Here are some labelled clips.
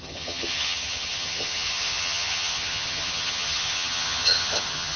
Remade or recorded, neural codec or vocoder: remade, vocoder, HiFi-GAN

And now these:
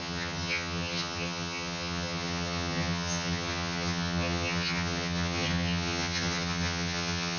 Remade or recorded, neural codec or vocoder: remade, vocoder, HiFi-GAN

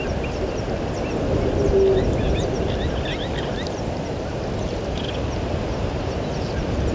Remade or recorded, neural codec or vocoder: recorded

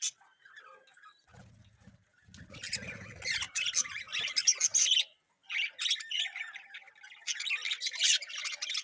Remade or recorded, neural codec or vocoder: recorded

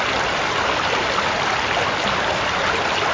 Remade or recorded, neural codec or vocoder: recorded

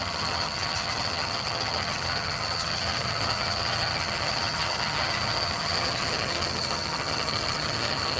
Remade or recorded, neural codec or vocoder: remade, vocoder, HiFi-GAN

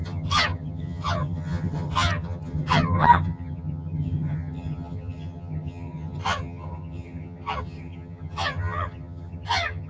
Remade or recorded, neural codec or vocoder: remade, vocoder, HiFi-GAN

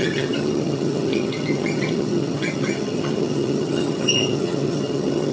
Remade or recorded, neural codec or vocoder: remade, vocoder, HiFi-GAN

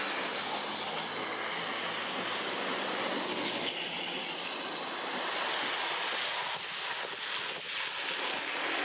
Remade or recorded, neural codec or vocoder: recorded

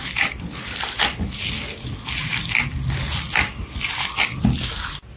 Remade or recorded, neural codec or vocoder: recorded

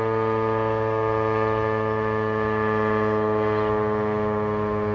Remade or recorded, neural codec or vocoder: recorded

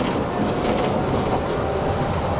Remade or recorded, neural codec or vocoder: recorded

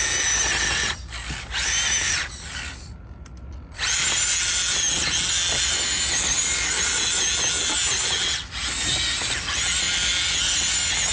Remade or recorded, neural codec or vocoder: recorded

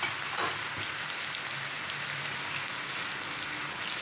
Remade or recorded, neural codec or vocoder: recorded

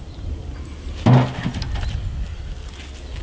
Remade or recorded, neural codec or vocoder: recorded